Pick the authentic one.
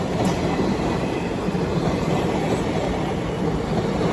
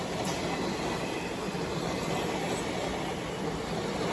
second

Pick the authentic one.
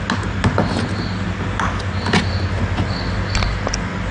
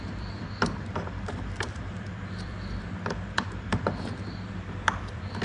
first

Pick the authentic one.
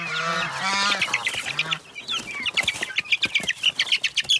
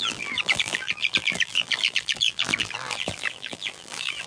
first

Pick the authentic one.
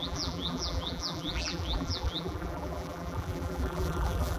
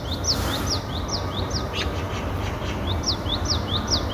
second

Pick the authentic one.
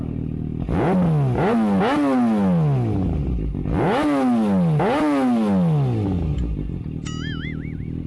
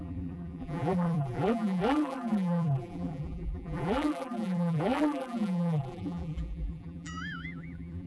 first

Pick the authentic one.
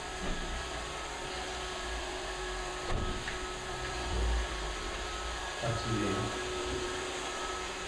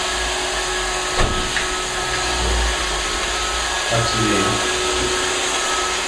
second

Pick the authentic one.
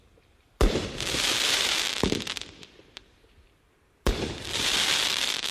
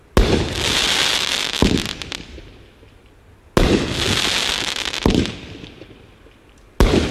second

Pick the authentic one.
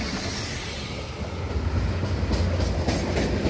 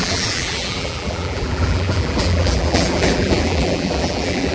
first